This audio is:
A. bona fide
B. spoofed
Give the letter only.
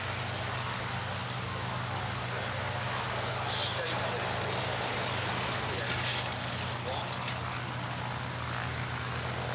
A